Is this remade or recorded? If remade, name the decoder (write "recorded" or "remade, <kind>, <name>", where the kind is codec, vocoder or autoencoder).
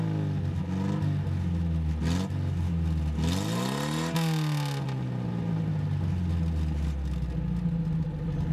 recorded